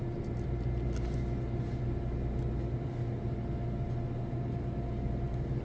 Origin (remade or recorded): recorded